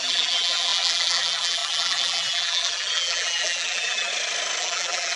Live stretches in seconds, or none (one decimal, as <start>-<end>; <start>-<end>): 4.1-4.6